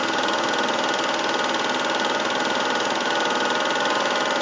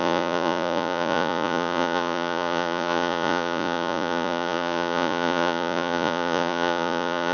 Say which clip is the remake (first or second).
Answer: second